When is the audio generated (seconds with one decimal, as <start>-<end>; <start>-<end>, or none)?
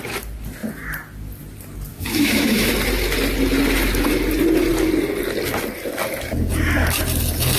1.9-2.7